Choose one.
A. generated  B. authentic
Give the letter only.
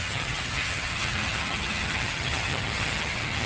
A